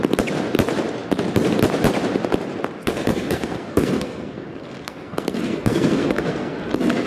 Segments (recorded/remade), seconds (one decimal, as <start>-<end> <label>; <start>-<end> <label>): 0.0-2.8 recorded; 2.8-7.1 remade